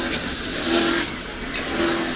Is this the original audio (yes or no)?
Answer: yes